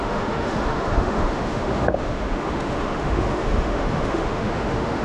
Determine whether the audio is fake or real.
fake